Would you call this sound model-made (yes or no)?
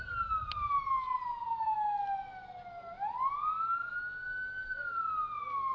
no